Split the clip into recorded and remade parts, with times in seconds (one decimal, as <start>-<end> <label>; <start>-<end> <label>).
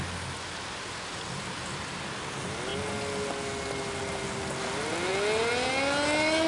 0.0-6.5 recorded